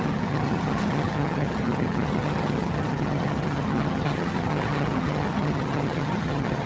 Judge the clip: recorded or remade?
remade